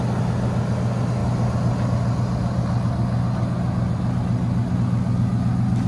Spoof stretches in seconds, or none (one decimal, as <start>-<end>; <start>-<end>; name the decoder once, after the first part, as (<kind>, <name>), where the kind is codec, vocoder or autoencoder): none